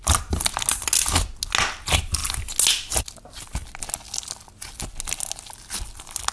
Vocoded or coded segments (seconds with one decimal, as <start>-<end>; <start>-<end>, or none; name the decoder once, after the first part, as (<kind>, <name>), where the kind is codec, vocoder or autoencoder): none